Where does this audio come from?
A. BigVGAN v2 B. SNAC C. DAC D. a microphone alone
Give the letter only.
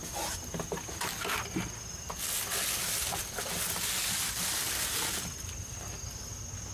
D